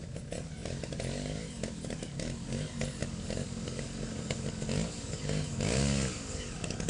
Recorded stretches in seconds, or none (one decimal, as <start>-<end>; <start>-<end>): none